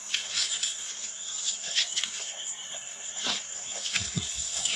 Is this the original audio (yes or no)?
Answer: no